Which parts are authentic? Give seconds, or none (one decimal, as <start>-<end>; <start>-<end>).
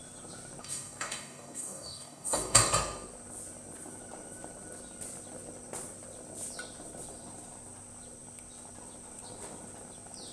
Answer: 0.0-0.6; 2.7-10.3